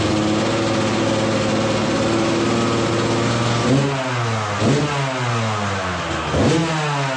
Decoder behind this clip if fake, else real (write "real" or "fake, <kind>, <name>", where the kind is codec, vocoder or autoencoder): real